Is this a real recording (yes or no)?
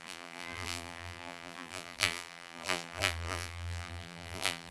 no